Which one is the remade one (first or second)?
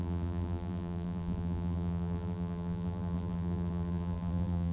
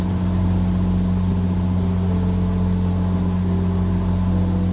first